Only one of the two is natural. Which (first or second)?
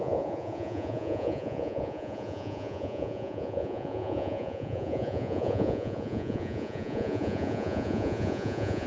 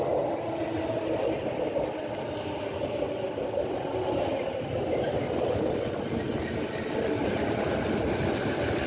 second